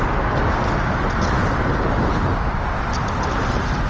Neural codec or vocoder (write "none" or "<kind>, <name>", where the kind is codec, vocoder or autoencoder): none